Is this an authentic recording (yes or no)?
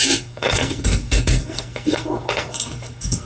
no